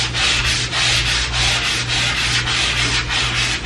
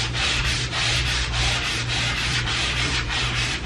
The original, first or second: first